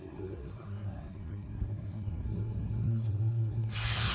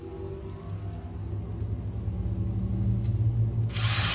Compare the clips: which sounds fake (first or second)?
first